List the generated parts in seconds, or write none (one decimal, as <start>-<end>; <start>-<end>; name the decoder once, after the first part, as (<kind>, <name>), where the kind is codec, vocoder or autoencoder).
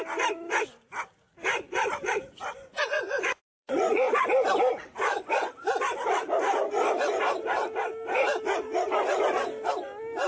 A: 2.5-4.1 (vocoder, Vocos)